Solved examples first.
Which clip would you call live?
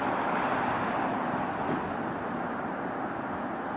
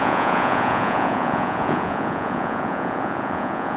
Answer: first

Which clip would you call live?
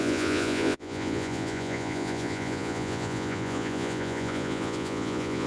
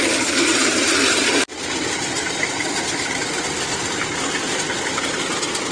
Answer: second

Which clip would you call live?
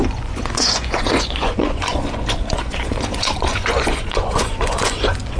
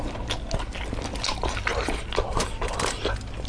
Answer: second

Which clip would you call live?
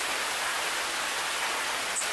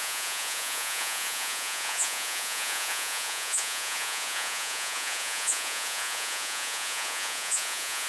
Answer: first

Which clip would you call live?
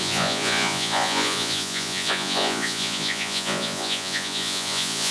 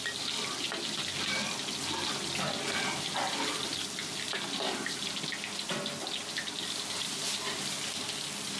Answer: second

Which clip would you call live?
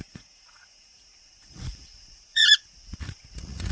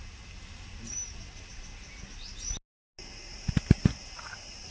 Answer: second